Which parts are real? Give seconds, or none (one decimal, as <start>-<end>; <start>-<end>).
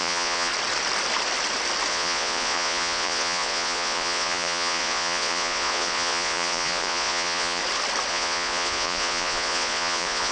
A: 0.5-1.9; 7.6-8.1